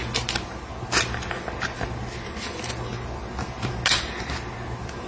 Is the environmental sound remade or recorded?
recorded